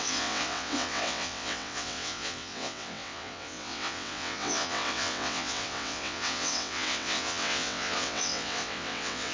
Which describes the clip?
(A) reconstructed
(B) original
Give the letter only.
A